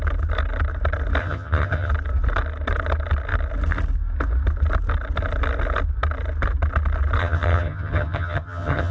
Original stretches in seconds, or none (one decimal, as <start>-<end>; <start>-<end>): 0.0-1.2; 1.9-7.2